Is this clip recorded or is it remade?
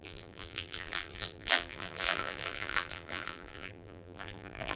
remade